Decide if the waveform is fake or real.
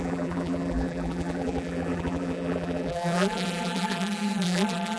fake